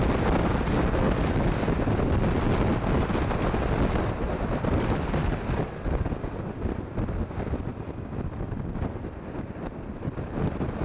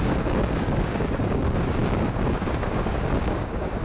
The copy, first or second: second